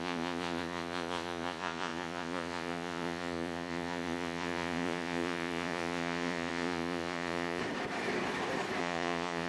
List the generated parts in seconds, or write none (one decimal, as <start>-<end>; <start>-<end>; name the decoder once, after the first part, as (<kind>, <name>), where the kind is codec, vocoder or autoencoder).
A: 0.0-7.6 (vocoder, Vocos); 8.8-9.5